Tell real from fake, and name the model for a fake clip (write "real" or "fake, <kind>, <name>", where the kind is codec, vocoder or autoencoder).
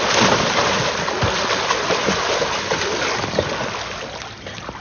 real